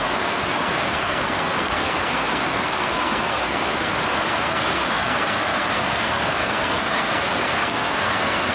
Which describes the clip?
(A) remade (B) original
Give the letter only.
A